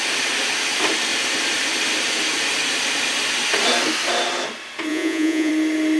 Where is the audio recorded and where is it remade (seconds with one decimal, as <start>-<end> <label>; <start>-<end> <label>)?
0.0-4.9 recorded; 4.9-5.5 remade; 5.5-6.0 recorded